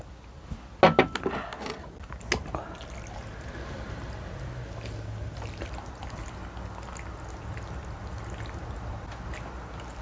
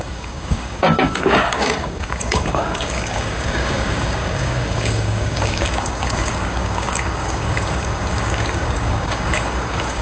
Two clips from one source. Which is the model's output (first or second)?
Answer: second